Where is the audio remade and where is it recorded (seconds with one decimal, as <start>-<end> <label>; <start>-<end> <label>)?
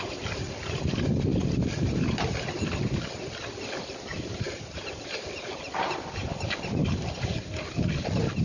0.0-4.1 recorded; 4.1-5.7 remade; 5.7-6.8 recorded; 6.8-7.3 remade; 7.3-8.4 recorded